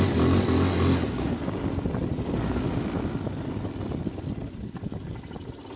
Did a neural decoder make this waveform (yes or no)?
no